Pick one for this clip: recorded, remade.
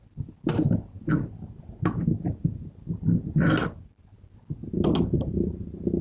recorded